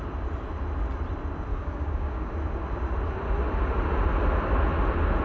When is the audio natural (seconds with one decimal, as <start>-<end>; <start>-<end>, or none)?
0.0-1.5; 2.3-5.2